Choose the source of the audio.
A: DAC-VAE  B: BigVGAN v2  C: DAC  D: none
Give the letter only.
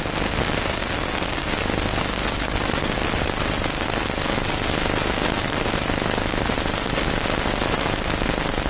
D